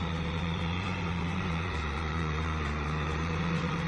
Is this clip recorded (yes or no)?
no